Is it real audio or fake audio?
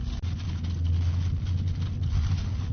real